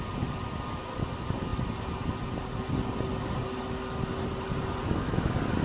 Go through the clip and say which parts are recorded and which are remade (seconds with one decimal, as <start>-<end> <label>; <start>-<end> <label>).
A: 0.0-5.6 recorded